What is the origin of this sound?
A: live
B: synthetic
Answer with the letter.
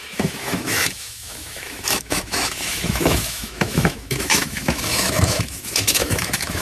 B